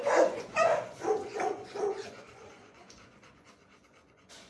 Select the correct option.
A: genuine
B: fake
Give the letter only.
B